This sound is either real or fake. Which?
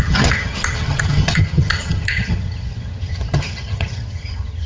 fake